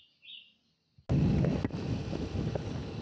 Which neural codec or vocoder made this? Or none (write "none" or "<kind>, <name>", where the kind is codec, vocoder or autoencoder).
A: none